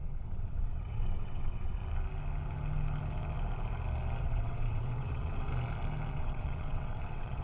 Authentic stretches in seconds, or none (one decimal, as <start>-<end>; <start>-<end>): 1.8-4.2; 5.5-6.1